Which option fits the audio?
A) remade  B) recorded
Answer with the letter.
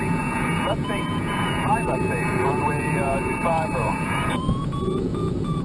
A